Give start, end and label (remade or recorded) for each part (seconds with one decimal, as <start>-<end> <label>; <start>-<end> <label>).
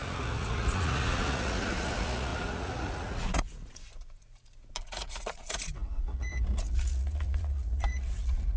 0.0-8.6 remade